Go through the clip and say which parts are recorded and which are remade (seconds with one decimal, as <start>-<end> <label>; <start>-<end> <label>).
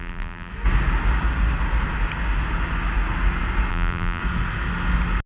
0.0-0.5 remade; 0.5-3.7 recorded; 3.7-4.2 remade; 4.2-5.3 recorded